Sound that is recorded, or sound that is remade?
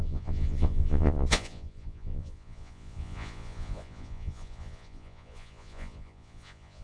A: remade